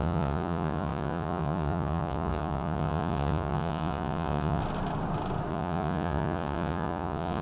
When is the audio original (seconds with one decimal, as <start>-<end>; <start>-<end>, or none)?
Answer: 4.6-5.5